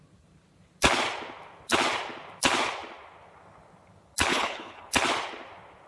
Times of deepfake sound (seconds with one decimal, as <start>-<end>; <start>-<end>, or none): 4.3-4.9